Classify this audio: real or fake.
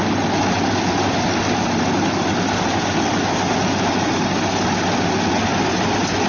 real